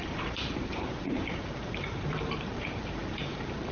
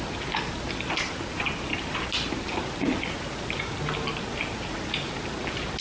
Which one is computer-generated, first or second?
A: first